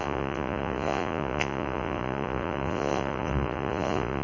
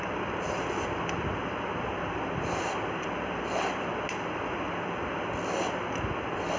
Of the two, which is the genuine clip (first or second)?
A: second